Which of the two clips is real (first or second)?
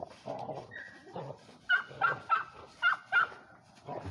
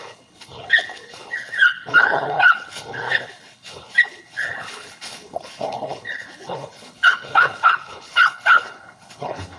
first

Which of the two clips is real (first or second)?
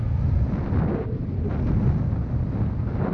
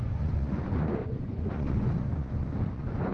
first